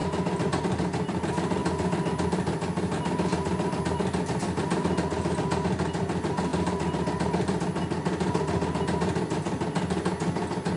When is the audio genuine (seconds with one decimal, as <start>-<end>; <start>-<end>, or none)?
0.0-6.5; 7.6-10.8